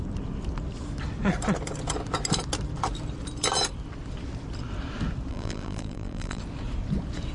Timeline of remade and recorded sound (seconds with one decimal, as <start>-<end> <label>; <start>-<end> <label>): 0.0-5.3 recorded; 5.3-6.4 remade; 6.4-7.3 recorded